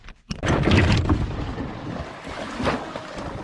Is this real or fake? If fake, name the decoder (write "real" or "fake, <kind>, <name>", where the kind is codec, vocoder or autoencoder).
real